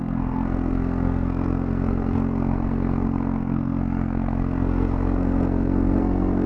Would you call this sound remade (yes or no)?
yes